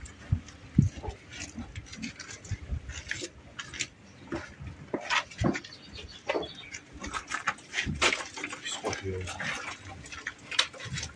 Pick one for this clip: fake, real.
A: real